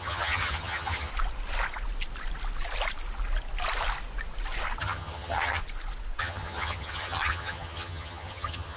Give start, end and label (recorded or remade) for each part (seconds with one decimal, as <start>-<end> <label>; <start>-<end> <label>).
0.0-1.1 remade; 1.1-4.8 recorded; 4.8-5.6 remade; 5.6-6.2 recorded; 6.2-8.8 remade